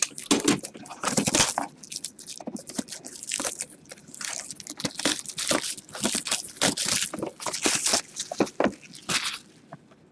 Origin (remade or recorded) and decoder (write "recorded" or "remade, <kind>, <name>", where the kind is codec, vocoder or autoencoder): recorded